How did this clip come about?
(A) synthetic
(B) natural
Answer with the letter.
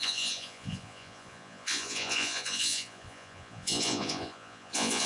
A